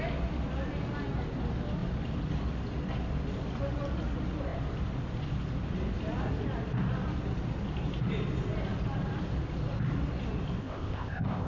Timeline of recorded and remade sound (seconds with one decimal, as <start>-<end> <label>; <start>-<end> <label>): 0.0-10.6 recorded; 10.6-11.5 remade